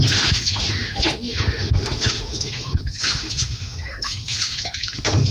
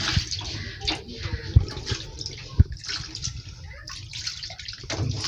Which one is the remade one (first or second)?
first